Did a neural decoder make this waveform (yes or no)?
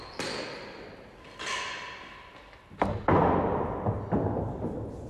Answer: no